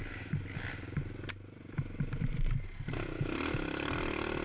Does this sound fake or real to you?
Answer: real